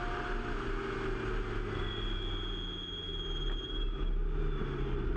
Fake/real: real